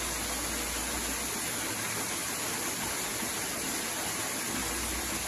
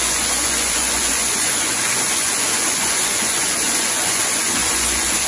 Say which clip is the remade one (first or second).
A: second